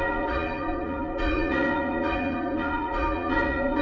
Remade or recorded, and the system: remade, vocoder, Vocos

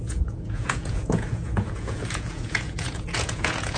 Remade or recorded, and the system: remade, vocoder, Vocos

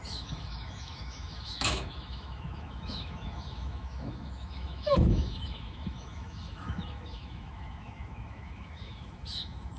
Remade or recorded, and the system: remade, autoencoder, DAC-VAE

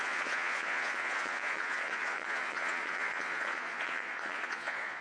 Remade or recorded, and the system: remade, vocoder, Vocos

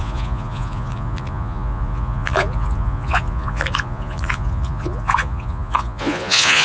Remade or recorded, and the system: remade, vocoder, Vocos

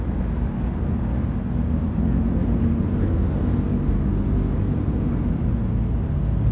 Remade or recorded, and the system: recorded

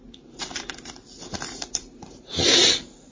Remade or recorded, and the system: remade, vocoder, BigVGAN v2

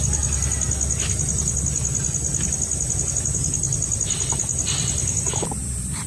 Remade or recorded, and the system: recorded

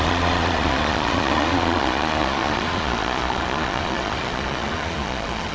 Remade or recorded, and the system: remade, vocoder, Vocos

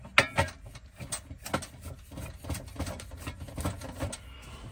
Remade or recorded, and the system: recorded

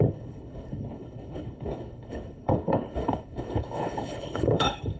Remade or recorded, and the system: remade, codec, HILCodec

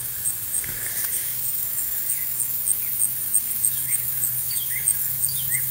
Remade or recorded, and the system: remade, codec, DAC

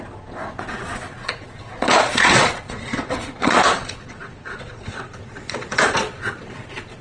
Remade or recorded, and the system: remade, vocoder, Vocos